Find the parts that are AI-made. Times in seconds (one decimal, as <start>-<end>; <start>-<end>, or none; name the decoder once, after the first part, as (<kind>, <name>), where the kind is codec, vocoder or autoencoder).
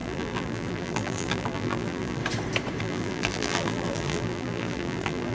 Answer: 0.0-2.2 (vocoder, BigVGAN v2); 2.8-5.3